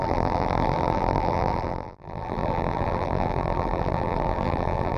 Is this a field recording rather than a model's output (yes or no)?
no